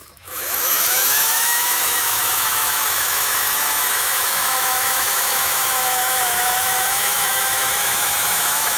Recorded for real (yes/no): no